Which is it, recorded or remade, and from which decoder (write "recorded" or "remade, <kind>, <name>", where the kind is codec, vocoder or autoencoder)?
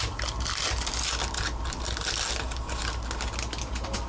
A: recorded